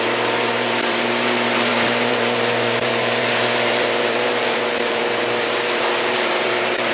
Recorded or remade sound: remade